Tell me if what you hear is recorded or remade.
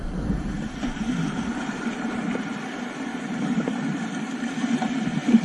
remade